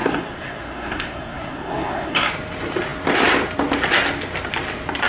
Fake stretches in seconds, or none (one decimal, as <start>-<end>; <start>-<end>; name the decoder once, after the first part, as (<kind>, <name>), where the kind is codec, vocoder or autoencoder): 0.0-2.3 (codec, SNAC)